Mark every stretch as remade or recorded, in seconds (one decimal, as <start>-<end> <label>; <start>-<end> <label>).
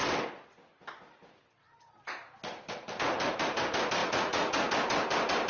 0.0-4.0 recorded; 4.0-4.7 remade; 4.7-5.5 recorded